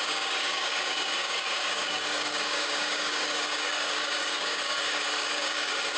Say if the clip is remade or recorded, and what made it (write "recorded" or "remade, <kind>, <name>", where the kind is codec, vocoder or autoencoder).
remade, codec, DAC